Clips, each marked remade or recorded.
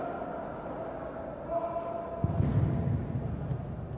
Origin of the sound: recorded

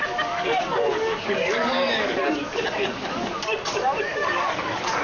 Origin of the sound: remade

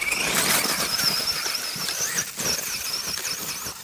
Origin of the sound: recorded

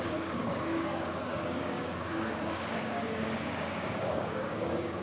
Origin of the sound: remade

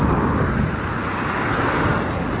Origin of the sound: recorded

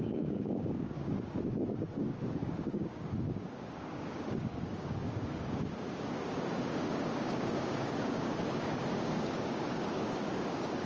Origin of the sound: remade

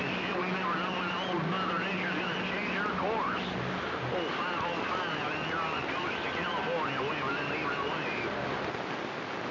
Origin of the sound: recorded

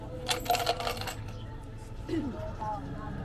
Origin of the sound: recorded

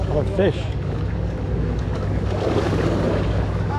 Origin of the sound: remade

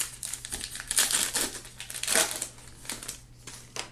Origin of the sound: recorded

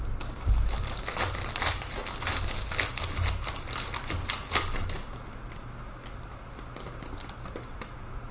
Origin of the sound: recorded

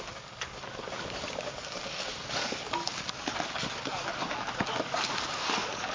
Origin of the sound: remade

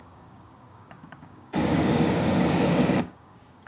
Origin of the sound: remade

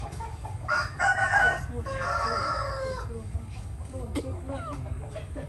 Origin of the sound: remade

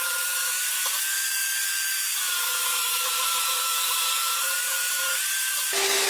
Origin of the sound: remade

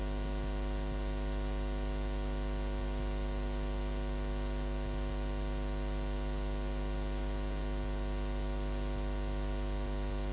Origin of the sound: recorded